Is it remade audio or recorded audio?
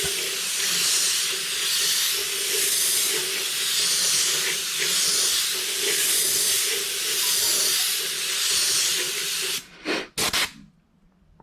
recorded